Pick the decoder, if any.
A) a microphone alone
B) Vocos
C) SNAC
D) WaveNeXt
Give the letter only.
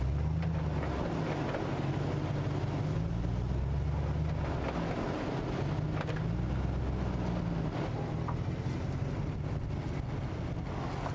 A